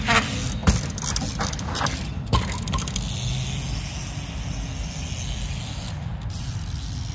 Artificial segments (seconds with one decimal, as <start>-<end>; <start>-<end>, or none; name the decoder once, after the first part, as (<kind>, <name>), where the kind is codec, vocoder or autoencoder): none